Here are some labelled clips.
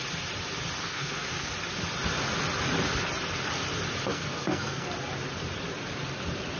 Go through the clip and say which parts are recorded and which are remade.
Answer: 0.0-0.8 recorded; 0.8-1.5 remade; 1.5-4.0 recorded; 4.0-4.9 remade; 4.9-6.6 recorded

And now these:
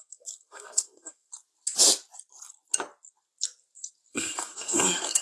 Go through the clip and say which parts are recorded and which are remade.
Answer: 0.0-1.3 remade; 1.3-4.1 recorded; 4.1-5.2 remade